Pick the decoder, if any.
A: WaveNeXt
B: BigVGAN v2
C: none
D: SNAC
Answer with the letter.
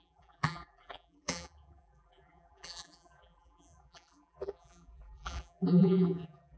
B